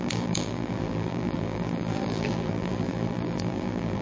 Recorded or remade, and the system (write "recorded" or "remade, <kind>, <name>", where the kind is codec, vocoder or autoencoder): remade, vocoder, BigVGAN v2